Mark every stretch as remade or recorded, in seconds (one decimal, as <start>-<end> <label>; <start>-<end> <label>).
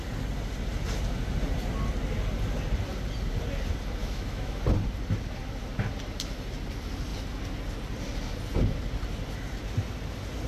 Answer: 0.0-4.0 recorded; 4.0-4.6 remade; 4.6-10.5 recorded